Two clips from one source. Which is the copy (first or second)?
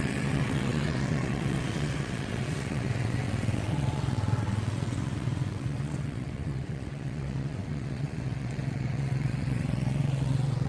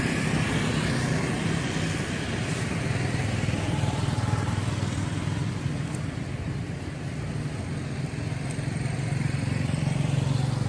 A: first